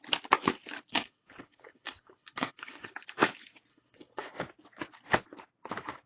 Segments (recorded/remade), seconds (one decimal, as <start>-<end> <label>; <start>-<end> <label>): 0.0-0.9 recorded; 0.9-2.9 remade; 2.9-3.7 recorded; 3.7-4.3 remade; 4.3-6.1 recorded